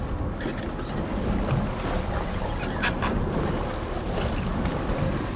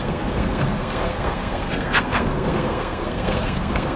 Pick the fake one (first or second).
second